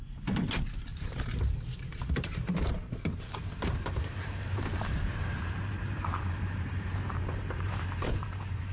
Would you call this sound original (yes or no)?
no